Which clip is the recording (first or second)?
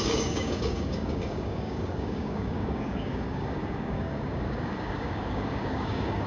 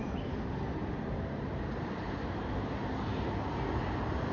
second